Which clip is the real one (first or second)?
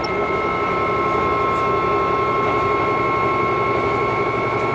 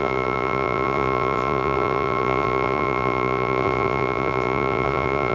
first